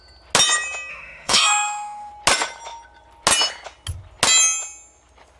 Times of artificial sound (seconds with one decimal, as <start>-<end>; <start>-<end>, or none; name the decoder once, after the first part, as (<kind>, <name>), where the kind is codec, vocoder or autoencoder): 0.9-2.1 (autoencoder, DAC-VAE)